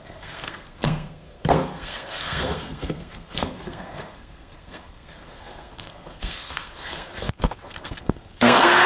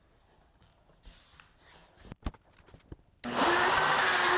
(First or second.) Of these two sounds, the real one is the second